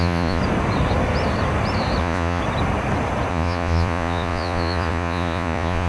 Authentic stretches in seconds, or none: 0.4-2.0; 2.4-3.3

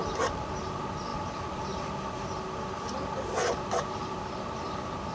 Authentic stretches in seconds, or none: 0.0-5.1